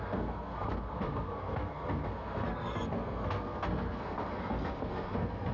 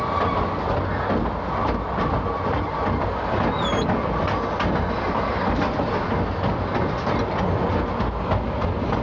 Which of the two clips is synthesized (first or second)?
first